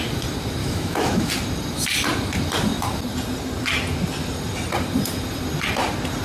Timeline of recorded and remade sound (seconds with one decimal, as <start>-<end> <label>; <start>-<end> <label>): 0.0-0.6 recorded; 0.6-1.3 remade; 1.3-6.2 recorded